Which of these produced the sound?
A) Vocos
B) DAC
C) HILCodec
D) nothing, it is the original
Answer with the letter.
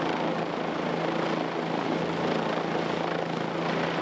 D